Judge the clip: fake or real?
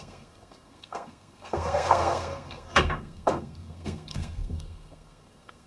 fake